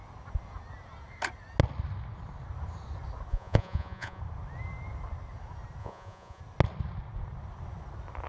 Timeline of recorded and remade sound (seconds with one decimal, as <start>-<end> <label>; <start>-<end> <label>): 0.0-3.3 recorded; 3.3-4.2 remade; 4.2-5.8 recorded; 5.8-6.4 remade; 6.4-8.3 recorded